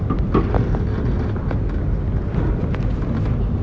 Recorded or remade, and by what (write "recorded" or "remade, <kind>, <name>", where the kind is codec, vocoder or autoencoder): recorded